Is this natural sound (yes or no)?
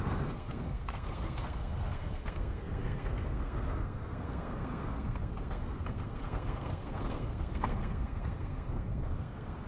no